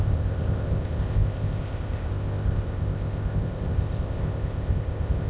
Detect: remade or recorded remade